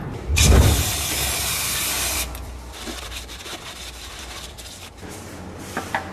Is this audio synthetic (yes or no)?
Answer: yes